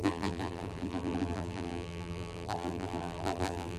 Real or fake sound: fake